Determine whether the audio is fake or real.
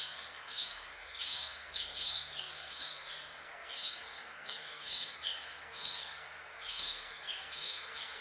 fake